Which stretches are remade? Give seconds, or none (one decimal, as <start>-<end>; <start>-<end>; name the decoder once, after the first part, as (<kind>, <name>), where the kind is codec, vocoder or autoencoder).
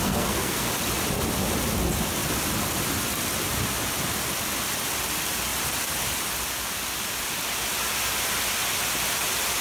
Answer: 0.0-0.7 (codec, SNAC)